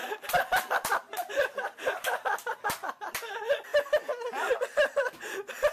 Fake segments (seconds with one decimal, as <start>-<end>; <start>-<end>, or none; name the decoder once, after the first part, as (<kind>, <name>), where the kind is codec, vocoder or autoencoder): 0.0-3.7 (vocoder, BigVGAN v2); 4.6-5.7